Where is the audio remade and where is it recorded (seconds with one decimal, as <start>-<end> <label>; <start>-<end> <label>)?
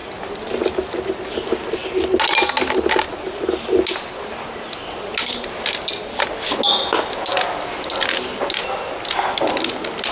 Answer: 0.0-10.1 recorded